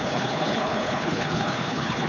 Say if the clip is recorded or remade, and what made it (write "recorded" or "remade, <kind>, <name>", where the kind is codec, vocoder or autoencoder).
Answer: remade, codec, HILCodec